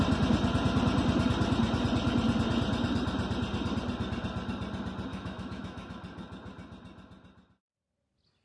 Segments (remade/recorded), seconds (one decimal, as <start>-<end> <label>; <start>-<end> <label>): 0.0-5.1 recorded; 5.1-5.9 remade; 5.9-8.4 recorded